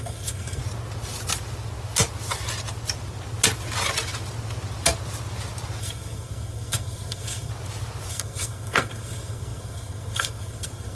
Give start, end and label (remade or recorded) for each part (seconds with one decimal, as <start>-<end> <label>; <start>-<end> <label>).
0.0-0.6 remade; 0.6-5.8 recorded; 5.8-7.5 remade; 7.5-8.1 recorded; 8.1-10.9 remade